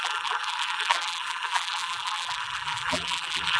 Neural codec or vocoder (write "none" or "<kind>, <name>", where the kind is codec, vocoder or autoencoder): vocoder, BigVGAN v2